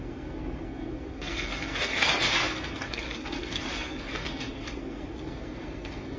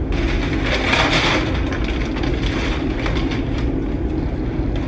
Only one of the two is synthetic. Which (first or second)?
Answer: first